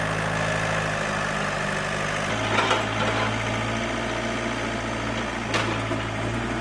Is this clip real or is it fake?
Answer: real